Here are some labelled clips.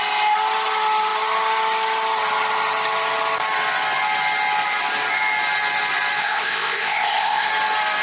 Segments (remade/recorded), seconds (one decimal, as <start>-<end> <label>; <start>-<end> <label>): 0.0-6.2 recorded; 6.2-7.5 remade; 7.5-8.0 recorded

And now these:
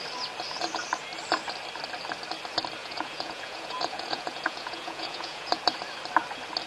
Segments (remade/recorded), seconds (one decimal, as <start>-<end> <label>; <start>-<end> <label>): 0.0-2.8 recorded; 2.8-5.6 remade; 5.6-6.7 recorded

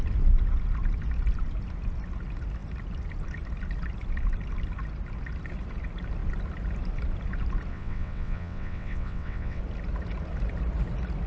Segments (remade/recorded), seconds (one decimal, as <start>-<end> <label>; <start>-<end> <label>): 0.0-7.7 recorded; 7.7-9.6 remade; 9.6-11.3 recorded